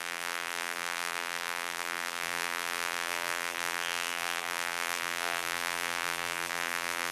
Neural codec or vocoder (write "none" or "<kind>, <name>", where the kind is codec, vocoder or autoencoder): vocoder, BigVGAN v2